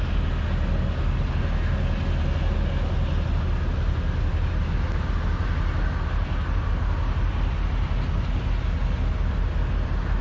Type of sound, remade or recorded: recorded